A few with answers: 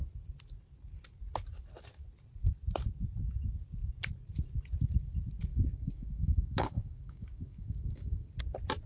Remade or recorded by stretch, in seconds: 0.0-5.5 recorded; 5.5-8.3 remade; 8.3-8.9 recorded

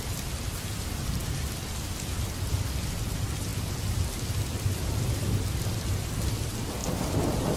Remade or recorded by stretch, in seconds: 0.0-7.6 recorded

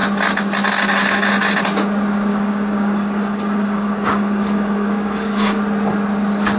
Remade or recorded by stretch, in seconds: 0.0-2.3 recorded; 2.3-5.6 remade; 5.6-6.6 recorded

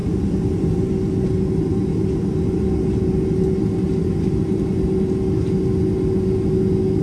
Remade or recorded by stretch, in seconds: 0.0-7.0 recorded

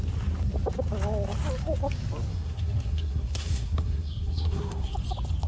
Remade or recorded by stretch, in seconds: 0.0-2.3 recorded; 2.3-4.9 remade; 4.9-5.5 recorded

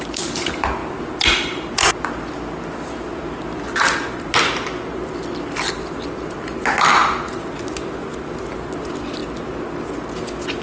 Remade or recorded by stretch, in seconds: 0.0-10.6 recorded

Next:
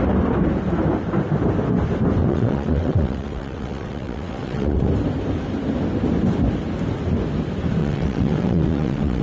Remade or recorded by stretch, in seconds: 0.0-2.2 recorded; 2.2-4.9 remade; 4.9-7.8 recorded; 7.8-9.2 remade